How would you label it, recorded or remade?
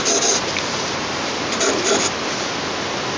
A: recorded